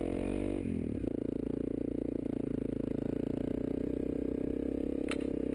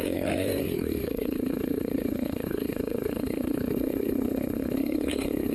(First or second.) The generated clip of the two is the second